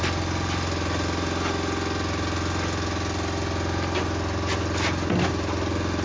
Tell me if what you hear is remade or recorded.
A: recorded